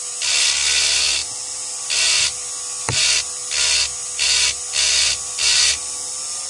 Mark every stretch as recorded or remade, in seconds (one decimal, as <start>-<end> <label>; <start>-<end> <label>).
0.0-6.5 recorded